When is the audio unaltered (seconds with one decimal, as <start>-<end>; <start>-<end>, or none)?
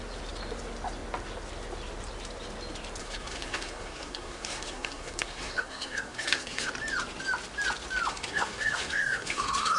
0.0-3.0; 6.7-8.1